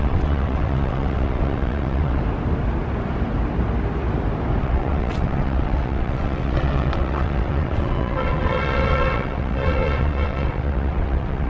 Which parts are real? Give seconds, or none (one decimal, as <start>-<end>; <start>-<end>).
2.2-4.6